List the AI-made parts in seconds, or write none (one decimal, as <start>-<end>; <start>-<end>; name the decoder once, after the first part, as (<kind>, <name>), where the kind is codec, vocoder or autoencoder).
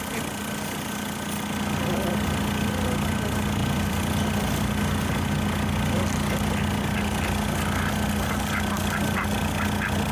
3.6-4.3 (vocoder, BigVGAN v2)